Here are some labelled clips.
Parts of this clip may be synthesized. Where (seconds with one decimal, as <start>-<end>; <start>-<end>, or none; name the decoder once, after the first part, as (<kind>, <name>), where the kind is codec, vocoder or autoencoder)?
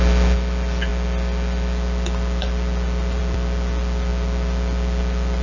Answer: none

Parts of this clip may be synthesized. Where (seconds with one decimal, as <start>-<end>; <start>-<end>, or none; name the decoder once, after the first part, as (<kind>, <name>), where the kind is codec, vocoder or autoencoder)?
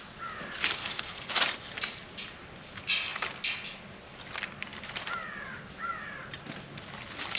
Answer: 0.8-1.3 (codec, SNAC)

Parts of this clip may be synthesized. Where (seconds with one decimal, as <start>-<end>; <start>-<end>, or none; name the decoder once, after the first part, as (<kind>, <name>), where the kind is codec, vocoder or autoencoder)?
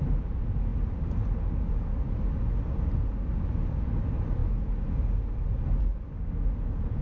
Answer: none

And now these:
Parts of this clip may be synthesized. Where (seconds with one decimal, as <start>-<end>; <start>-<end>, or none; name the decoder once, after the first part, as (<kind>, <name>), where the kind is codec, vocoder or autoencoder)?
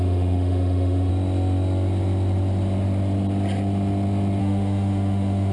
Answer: 0.0-1.1 (autoencoder, DAC-VAE); 4.4-5.5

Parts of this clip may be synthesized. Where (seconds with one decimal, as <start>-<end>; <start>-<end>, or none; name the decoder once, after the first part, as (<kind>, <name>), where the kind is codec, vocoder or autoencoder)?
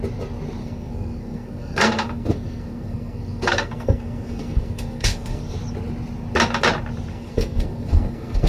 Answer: 0.6-5.4 (codec, SNAC); 7.1-8.5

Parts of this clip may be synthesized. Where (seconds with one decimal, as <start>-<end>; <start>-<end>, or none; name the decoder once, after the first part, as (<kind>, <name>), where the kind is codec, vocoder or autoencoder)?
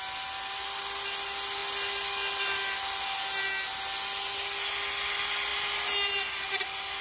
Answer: none